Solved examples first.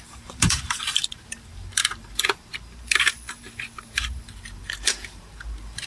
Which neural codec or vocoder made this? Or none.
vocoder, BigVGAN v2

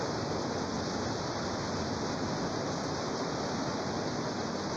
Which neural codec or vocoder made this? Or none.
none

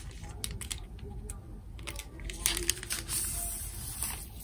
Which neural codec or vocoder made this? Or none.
none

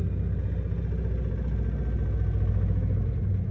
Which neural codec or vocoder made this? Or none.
none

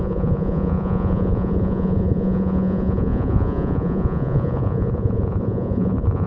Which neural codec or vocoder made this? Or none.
vocoder, Vocos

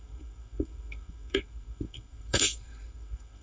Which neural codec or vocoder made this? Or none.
codec, SNAC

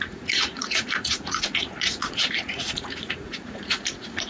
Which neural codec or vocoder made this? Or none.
vocoder, Vocos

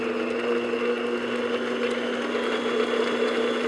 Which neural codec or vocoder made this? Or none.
none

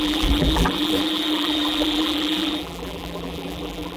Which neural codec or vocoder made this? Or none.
vocoder, BigVGAN v2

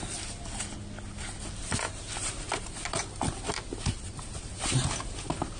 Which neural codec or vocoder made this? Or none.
none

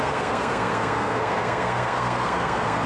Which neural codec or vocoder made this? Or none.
codec, SNAC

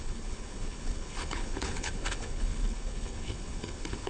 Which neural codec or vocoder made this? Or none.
codec, HILCodec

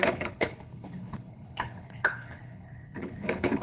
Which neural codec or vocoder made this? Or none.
codec, HILCodec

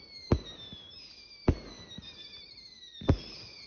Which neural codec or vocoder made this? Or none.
none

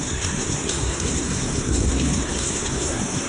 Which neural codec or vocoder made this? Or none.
codec, SNAC